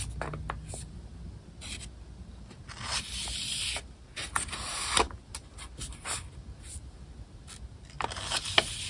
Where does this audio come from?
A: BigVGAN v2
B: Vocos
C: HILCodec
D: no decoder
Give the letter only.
D